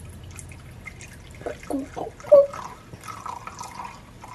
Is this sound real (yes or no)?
yes